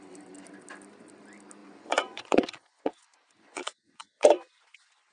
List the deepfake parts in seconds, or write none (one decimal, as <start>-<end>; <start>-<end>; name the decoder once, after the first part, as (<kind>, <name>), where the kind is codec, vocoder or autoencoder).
1.6-5.1 (vocoder, Vocos)